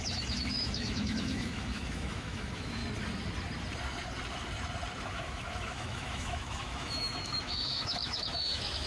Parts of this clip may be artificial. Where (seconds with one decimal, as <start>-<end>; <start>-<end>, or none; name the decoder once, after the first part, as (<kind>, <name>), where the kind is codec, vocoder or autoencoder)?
0.0-2.8 (autoencoder, DAC-VAE); 5.1-8.9